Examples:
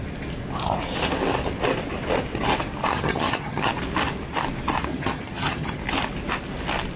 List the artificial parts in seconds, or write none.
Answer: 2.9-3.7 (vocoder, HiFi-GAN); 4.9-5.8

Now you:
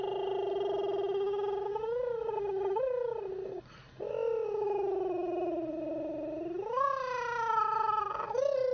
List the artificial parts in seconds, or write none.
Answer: none

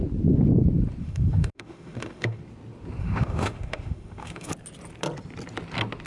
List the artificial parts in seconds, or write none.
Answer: 1.0-2.4 (autoencoder, DAC-VAE); 3.0-4.5